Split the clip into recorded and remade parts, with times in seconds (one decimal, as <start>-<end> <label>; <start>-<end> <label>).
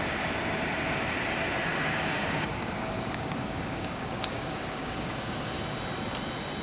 0.0-1.7 recorded; 1.7-5.6 remade; 5.6-6.6 recorded